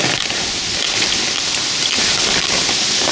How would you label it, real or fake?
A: real